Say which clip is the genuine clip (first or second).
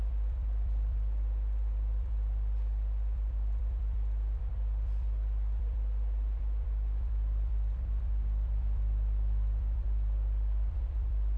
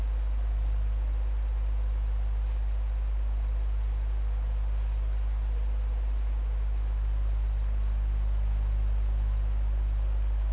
second